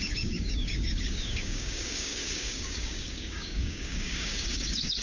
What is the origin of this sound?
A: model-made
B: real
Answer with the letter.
A